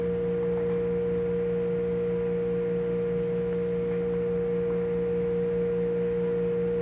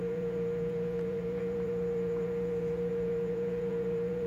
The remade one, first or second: second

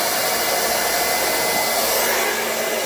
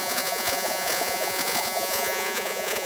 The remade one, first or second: second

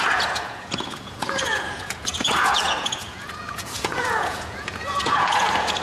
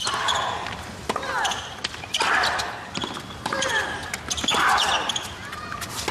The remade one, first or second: first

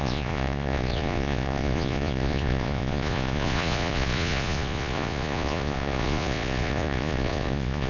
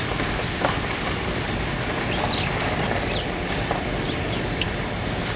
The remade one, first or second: first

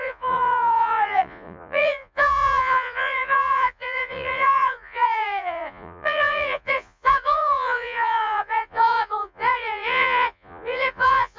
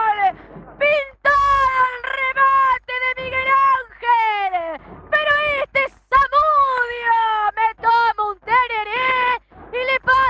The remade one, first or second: first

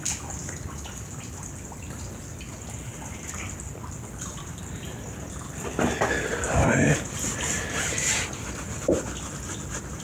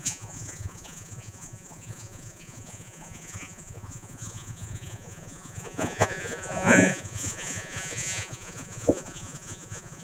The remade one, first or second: second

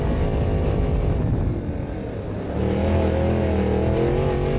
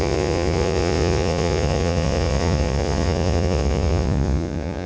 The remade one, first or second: second